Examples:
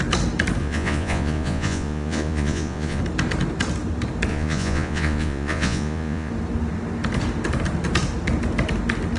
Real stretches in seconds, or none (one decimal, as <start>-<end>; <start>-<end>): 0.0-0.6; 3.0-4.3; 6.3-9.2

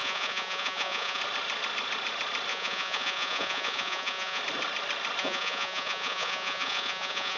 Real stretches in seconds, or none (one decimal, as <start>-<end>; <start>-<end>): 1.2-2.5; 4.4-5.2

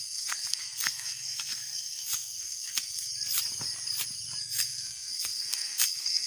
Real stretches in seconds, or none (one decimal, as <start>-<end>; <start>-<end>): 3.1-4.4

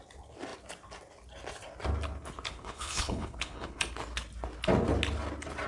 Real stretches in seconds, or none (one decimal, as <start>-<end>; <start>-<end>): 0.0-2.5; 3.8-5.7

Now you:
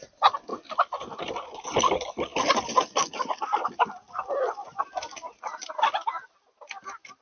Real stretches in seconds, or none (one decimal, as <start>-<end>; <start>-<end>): 0.0-7.2

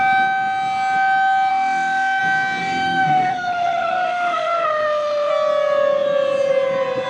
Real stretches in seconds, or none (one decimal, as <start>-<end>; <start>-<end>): 0.0-1.5; 2.2-2.6; 5.3-7.1